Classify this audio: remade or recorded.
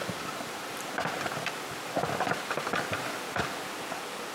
recorded